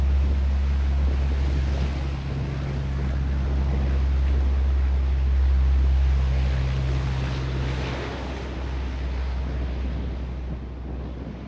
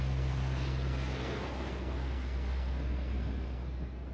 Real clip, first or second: first